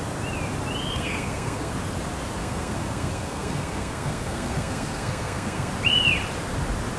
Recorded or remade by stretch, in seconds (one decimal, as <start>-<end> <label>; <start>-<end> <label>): 0.0-0.9 recorded; 0.9-1.7 remade; 1.7-2.4 recorded; 2.4-5.7 remade; 5.7-7.0 recorded